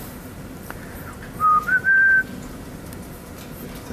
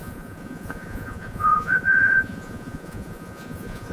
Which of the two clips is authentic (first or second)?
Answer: first